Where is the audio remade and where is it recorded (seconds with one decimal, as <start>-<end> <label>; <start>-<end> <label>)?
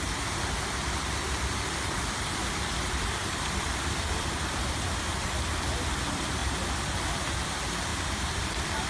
0.0-3.2 recorded; 3.2-5.1 remade; 5.1-6.4 recorded; 6.4-7.2 remade; 7.2-7.9 recorded; 7.9-8.9 remade